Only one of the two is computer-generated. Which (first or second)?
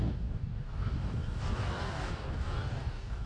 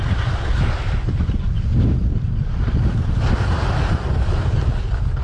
first